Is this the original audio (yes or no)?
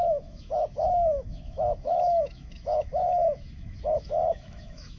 no